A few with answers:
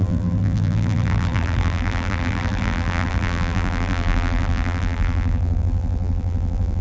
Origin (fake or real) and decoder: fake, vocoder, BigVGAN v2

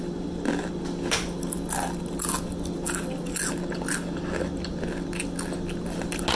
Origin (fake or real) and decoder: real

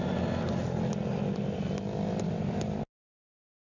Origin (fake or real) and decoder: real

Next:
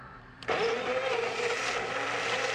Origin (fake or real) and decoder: fake, vocoder, BigVGAN v2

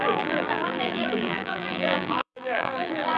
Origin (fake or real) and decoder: fake, vocoder, BigVGAN v2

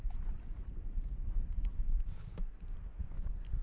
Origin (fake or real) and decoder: real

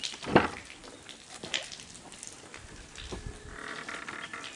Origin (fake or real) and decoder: real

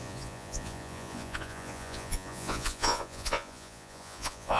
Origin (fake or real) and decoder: fake, vocoder, Vocos